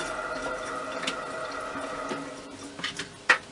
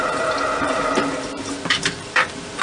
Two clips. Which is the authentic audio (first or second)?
first